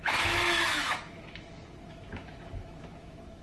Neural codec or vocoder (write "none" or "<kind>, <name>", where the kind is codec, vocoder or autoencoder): autoencoder, DAC-VAE